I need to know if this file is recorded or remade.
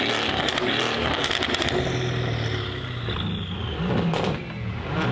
recorded